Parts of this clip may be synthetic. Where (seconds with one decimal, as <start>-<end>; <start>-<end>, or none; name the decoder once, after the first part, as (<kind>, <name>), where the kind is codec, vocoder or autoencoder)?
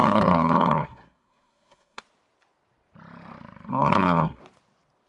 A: 0.0-2.0 (codec, SNAC); 3.7-4.4